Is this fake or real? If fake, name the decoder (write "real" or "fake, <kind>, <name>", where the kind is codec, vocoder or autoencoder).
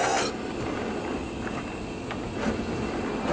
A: real